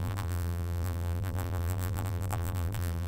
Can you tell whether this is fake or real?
fake